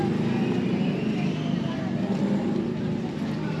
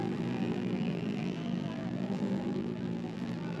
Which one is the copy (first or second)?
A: second